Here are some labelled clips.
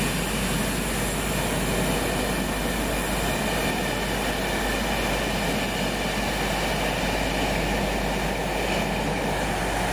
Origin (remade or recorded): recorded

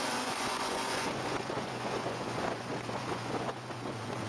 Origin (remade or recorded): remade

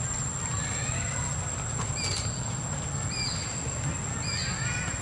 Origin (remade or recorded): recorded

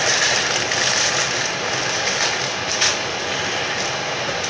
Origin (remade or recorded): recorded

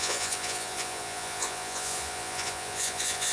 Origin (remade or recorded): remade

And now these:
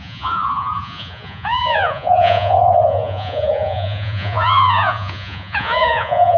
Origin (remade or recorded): remade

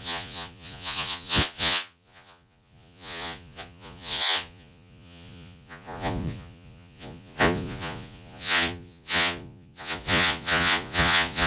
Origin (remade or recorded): remade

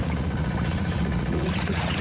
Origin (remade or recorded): remade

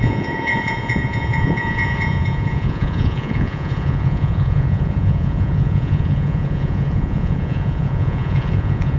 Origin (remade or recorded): remade